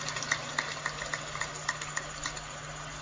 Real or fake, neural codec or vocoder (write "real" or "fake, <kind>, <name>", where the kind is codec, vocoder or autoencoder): real